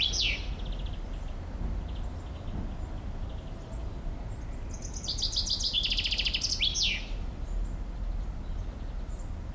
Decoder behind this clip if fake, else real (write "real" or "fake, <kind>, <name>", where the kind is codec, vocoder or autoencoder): real